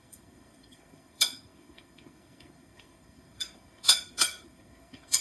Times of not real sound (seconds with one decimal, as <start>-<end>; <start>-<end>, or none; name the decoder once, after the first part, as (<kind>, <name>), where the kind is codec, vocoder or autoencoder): 0.0-5.2 (codec, SNAC)

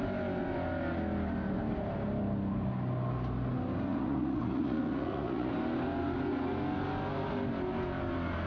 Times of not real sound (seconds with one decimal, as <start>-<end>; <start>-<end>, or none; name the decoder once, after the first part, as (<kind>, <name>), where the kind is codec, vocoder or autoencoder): 3.9-5.5 (vocoder, Vocos)

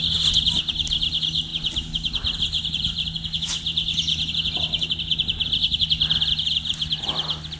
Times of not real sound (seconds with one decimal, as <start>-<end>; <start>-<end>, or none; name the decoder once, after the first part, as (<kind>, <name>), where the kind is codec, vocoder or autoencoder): none

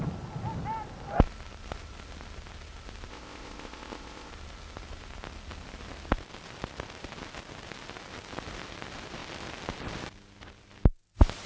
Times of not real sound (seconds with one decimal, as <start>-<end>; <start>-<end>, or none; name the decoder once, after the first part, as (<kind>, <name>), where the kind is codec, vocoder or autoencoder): 3.1-4.3 (codec, ZipCodec)

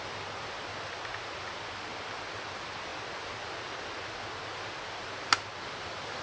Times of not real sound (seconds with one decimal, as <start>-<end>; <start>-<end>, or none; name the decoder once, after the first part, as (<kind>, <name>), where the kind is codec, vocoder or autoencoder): none